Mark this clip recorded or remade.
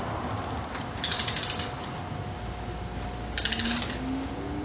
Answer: recorded